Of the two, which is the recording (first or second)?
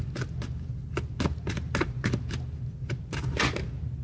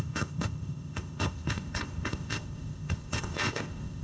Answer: first